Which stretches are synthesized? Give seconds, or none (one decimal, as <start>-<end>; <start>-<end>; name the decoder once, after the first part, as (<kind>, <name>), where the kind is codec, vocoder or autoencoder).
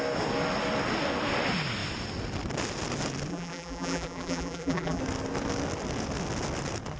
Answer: 3.3-5.0 (vocoder, BigVGAN v2)